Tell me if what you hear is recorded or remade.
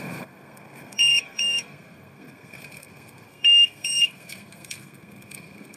remade